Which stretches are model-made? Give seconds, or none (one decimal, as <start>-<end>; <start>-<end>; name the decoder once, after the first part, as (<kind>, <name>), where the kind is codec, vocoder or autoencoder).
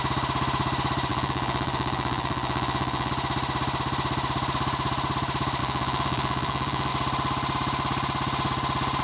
1.1-3.1 (vocoder, BigVGAN v2); 5.6-6.9